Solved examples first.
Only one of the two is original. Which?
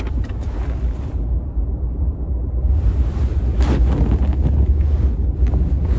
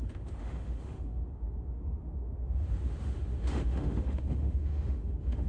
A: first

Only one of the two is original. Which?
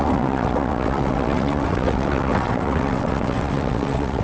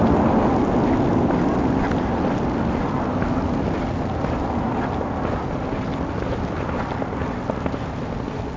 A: second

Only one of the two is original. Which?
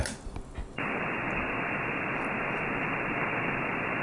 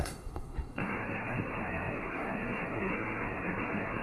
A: first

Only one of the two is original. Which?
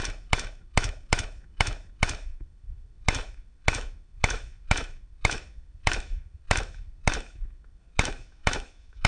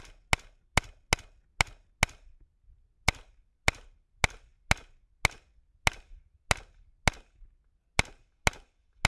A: second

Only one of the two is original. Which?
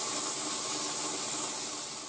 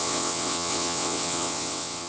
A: first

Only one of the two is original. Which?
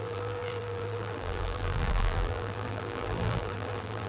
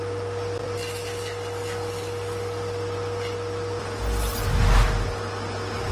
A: second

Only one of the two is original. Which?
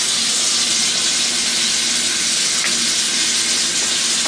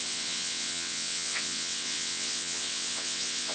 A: first